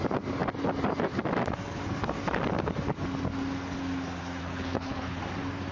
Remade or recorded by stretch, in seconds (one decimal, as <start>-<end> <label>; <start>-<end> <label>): 0.0-4.4 recorded; 4.4-5.2 remade; 5.2-5.7 recorded